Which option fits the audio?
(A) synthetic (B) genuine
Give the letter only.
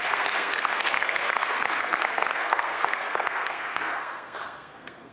A